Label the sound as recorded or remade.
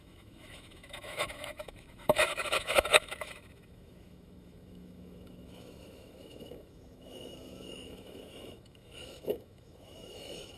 remade